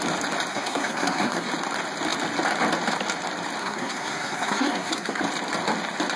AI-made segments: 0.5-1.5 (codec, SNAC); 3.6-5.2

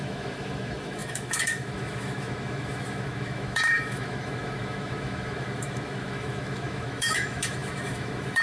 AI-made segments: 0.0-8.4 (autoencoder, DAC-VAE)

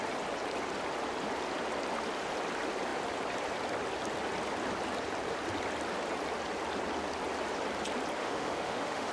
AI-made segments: 8.2-9.1 (autoencoder, DAC-VAE)

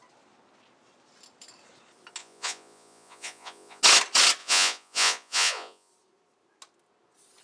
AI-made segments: 2.2-3.8 (vocoder, Vocos); 4.4-5.9

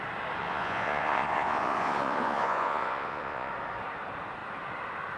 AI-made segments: 0.4-3.5 (vocoder, Vocos)

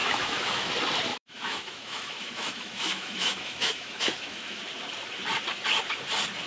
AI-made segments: 0.0-0.7 (autoencoder, DAC-VAE); 1.1-4.6